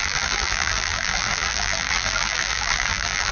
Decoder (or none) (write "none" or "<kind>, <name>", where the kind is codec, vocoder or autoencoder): vocoder, BigVGAN v2